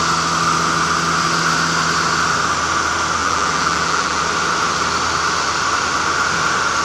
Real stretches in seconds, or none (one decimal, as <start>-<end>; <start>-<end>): 0.0-3.2; 4.2-6.8